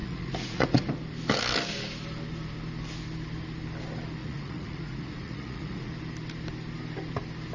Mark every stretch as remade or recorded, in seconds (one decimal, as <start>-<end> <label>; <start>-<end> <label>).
0.0-0.9 remade; 0.9-4.2 recorded; 4.2-5.9 remade; 5.9-7.5 recorded